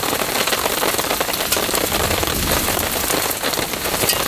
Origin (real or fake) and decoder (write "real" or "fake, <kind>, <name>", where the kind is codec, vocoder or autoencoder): real